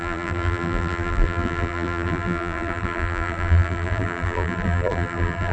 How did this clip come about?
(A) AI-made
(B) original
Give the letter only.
A